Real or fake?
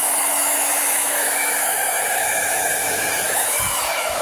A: fake